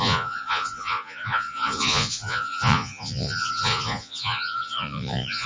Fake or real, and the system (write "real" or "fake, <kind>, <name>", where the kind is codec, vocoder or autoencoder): fake, vocoder, Vocos